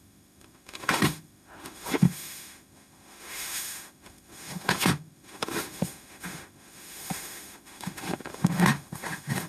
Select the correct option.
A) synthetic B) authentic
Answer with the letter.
A